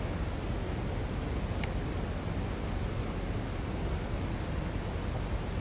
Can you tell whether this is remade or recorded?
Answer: recorded